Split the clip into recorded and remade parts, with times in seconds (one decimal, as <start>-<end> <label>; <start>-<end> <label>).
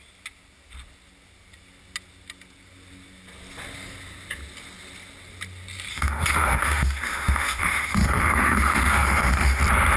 0.0-5.9 recorded; 5.9-9.6 remade; 9.6-10.0 recorded